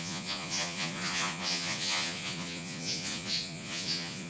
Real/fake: fake